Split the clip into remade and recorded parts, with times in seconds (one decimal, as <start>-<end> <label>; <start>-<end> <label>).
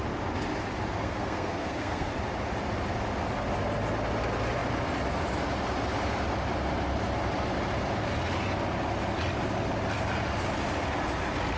0.0-1.0 recorded; 1.0-2.1 remade; 2.1-11.6 recorded